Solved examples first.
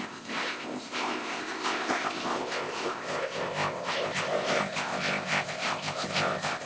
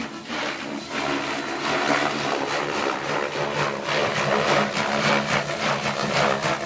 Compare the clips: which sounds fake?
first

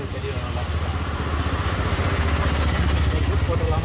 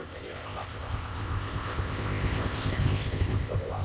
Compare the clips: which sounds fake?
second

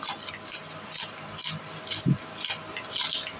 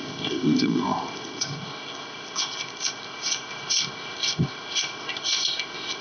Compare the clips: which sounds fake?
second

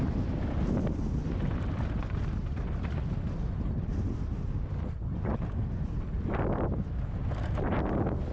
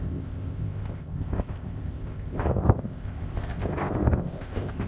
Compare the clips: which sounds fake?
second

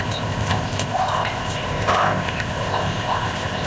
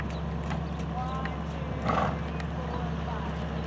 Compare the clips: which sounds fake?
first